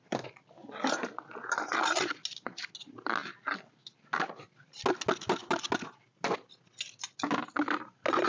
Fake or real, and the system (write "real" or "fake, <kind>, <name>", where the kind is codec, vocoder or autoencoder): real